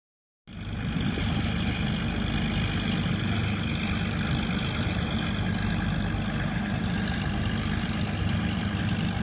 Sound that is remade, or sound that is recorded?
recorded